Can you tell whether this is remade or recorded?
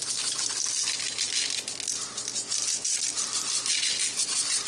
recorded